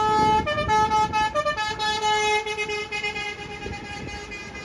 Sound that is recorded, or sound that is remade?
recorded